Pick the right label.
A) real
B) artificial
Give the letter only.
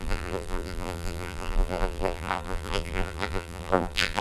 B